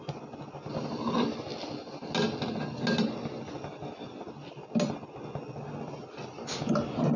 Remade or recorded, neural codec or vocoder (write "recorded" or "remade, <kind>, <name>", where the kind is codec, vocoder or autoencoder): recorded